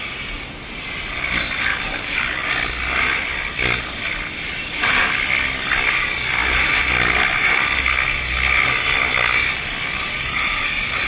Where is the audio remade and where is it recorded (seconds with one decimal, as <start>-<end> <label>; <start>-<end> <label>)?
0.0-1.7 recorded; 1.7-2.5 remade; 2.5-11.1 recorded